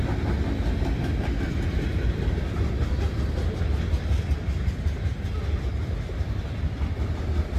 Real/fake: real